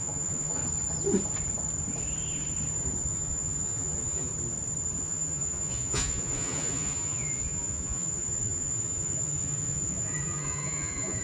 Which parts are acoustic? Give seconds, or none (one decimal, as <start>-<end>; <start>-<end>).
0.6-3.1; 4.3-5.0